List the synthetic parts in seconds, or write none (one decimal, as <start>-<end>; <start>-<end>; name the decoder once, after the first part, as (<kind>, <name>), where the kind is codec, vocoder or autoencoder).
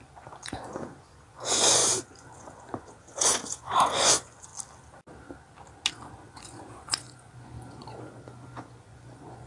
0.0-4.5 (vocoder, Vocos); 5.9-9.5